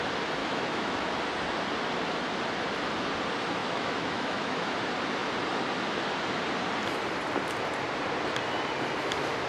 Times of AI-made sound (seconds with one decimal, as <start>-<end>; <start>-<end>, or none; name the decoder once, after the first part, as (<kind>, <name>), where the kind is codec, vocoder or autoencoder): 0.4-1.2 (autoencoder, DAC-VAE); 3.6-4.7